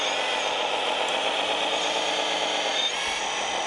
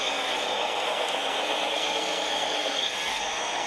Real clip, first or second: first